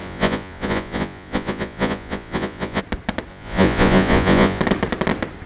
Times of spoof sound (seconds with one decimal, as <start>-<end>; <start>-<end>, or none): 0.0-2.8; 3.3-4.6